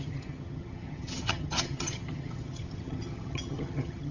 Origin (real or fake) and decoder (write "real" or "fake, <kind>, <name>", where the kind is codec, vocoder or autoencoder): fake, vocoder, HiFi-GAN